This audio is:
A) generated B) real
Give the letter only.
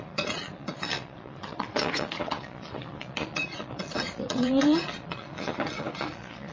A